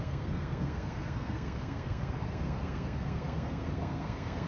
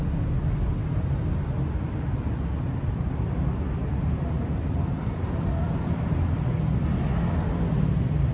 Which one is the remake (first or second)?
first